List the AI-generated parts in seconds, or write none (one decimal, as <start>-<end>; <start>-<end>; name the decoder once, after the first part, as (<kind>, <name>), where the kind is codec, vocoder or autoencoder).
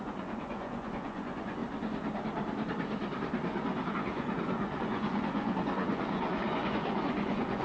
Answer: 0.0-1.6 (vocoder, Vocos); 3.9-7.6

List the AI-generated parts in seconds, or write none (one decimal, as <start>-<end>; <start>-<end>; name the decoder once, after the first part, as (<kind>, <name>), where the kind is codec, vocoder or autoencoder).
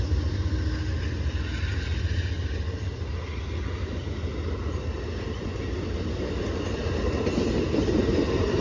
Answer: 1.7-2.9 (vocoder, BigVGAN v2)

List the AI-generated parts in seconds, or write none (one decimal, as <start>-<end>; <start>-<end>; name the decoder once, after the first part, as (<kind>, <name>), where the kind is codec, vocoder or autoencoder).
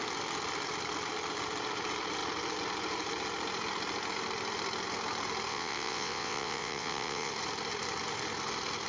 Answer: 5.5-7.3 (vocoder, WaveNeXt)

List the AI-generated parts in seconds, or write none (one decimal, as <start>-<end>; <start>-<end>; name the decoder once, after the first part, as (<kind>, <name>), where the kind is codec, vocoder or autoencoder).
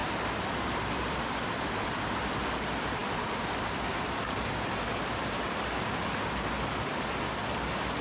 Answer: none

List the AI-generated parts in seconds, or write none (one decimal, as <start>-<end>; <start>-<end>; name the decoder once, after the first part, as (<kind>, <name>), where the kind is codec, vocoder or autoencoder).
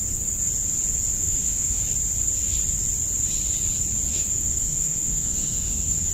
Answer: 1.2-1.8 (autoencoder, DAC-VAE); 4.1-6.1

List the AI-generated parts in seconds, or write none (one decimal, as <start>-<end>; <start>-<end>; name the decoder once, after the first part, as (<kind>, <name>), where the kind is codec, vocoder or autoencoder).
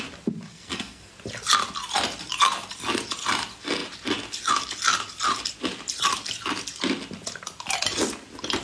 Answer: 0.5-1.1 (codec, SNAC)